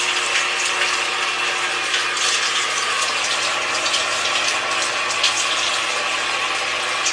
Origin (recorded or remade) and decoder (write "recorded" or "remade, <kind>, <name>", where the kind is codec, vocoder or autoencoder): recorded